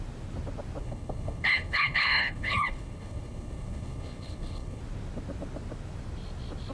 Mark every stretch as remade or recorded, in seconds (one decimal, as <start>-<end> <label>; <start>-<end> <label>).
0.0-0.8 recorded; 0.8-4.8 remade; 4.8-6.7 recorded